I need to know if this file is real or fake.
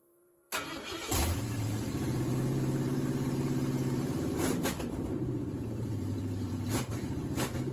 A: fake